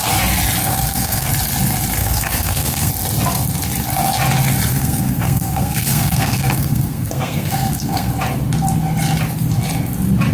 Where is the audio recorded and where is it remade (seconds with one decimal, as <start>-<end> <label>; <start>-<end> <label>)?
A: 0.0-0.6 recorded; 0.6-1.3 remade; 1.3-2.0 recorded; 2.0-2.9 remade; 2.9-4.7 recorded; 4.7-8.1 remade; 8.1-10.3 recorded